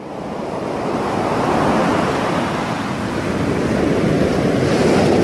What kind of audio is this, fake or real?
real